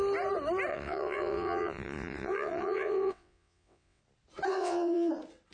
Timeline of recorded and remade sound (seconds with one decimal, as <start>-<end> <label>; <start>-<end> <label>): 0.0-0.7 recorded; 0.7-4.0 remade; 4.0-4.5 recorded; 4.5-5.1 remade; 5.1-5.5 recorded